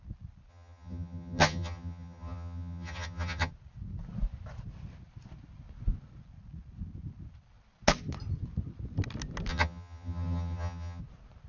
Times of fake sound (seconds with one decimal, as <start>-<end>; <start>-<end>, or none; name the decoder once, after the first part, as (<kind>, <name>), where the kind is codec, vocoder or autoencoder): 0.5-3.5 (vocoder, HiFi-GAN); 9.5-11.0